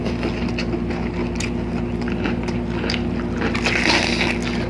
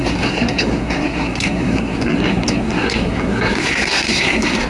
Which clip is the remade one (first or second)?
second